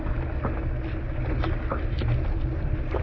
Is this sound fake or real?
real